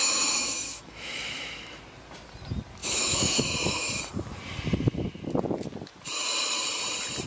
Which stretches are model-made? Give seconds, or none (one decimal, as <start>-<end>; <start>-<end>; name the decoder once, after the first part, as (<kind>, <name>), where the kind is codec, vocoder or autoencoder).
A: 0.0-1.8 (autoencoder, DAC-VAE); 2.8-4.0